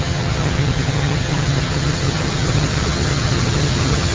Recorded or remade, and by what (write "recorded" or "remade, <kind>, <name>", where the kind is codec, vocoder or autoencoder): remade, vocoder, HiFi-GAN